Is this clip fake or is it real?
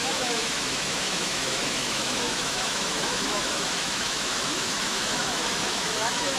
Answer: fake